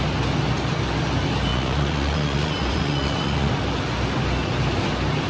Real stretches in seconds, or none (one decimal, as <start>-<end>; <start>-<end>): 0.0-1.5; 3.5-5.3